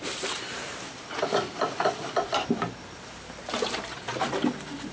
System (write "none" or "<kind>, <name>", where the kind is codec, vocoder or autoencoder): vocoder, BigVGAN v2